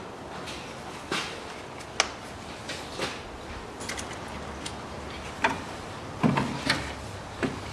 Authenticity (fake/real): real